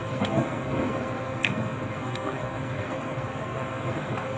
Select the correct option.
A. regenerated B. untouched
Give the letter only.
A